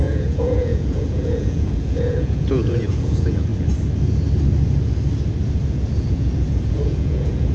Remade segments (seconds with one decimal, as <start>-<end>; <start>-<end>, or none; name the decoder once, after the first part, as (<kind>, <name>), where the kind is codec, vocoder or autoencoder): 0.0-3.5 (vocoder, Vocos); 5.7-7.5